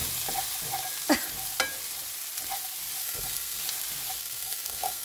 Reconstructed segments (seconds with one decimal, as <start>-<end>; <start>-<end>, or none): 3.0-3.6; 4.2-5.0